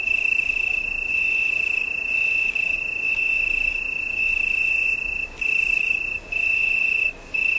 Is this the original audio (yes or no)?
yes